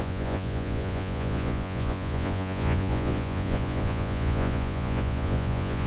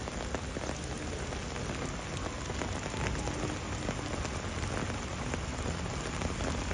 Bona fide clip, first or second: second